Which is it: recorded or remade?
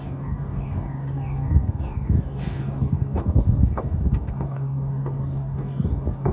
remade